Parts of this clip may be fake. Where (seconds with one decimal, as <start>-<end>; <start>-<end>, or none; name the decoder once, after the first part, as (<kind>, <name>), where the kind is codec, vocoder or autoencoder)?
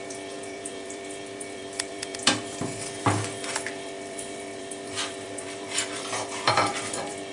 0.0-7.3 (vocoder, BigVGAN v2)